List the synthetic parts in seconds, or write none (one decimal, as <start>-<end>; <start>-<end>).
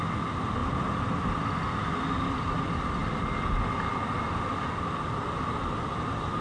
none